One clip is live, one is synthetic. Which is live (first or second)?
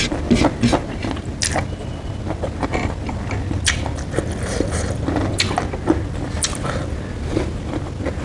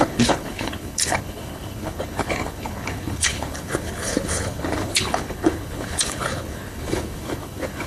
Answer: first